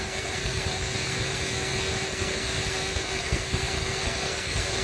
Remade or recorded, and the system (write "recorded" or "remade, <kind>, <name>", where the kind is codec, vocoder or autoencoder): remade, codec, SNAC